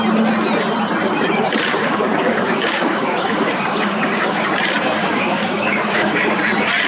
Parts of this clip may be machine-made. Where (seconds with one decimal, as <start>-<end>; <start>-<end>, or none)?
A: 1.7-4.5; 5.0-6.4